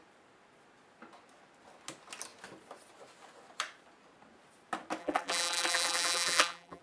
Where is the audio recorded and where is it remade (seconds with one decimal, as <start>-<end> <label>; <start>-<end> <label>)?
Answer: 0.0-5.0 recorded; 5.0-6.8 remade